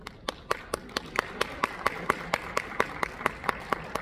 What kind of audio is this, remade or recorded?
recorded